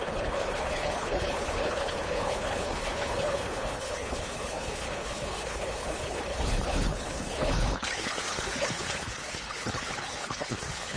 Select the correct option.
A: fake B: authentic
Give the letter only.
A